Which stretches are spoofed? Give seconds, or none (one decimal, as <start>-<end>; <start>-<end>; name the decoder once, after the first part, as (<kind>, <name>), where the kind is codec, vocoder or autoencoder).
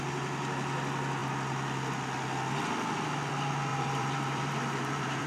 3.7-5.3 (vocoder, BigVGAN v2)